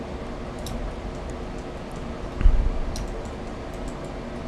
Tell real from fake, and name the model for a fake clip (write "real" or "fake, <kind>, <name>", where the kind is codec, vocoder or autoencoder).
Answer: real